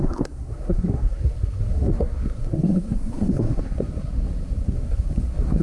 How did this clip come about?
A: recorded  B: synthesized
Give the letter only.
B